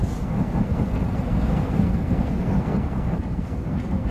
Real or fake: fake